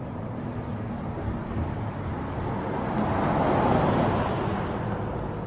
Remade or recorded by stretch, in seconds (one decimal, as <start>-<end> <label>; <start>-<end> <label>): 0.0-1.4 remade; 1.4-4.0 recorded; 4.0-4.5 remade; 4.5-5.5 recorded